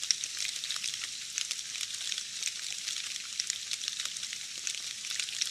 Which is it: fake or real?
real